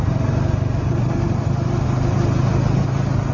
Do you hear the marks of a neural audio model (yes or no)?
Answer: no